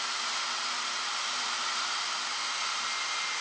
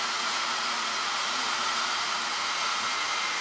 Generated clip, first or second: second